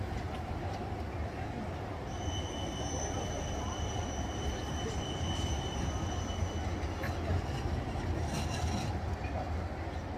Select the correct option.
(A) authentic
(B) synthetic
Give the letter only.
A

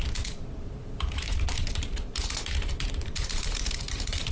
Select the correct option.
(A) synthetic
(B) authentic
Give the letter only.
A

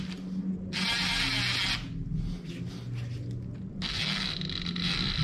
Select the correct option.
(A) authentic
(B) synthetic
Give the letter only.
A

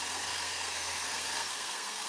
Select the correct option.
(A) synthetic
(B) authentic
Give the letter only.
A